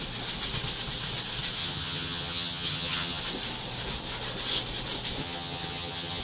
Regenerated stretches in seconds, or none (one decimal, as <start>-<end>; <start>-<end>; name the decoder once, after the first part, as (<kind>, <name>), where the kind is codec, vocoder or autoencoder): 1.6-3.2 (vocoder, HiFi-GAN); 5.2-6.2